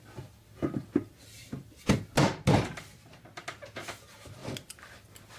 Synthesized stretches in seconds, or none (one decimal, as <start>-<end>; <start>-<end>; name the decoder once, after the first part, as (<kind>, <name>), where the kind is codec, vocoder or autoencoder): none